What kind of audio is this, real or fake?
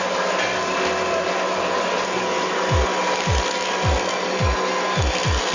real